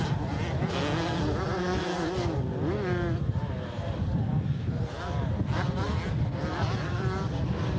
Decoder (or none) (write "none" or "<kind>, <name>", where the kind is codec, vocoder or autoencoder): none